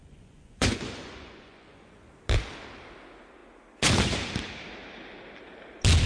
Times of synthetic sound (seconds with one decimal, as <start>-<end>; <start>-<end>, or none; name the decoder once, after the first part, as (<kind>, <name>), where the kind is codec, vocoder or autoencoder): 0.0-2.1 (vocoder, Vocos)